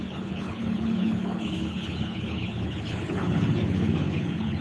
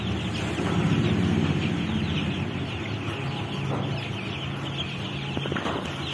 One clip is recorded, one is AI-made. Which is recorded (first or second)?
second